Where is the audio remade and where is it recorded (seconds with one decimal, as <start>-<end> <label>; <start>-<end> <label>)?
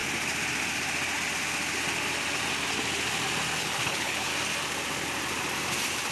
0.0-3.6 recorded; 3.6-4.3 remade; 4.3-6.1 recorded